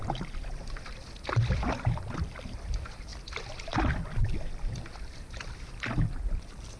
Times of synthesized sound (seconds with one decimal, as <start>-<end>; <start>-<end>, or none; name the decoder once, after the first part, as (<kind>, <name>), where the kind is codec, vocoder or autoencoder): none